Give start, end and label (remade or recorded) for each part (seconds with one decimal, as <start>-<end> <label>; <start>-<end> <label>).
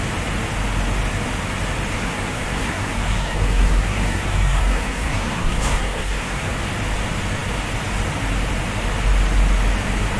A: 0.0-1.9 recorded; 1.9-6.5 remade; 6.5-10.2 recorded